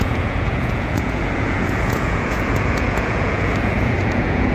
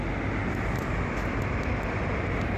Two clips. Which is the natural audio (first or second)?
second